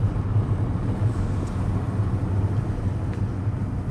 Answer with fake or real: real